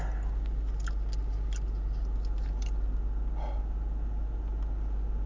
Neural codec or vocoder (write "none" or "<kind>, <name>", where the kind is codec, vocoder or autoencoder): none